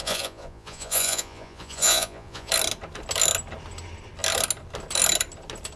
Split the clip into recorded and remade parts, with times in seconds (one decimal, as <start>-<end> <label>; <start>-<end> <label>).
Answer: 0.0-2.5 remade; 2.5-5.8 recorded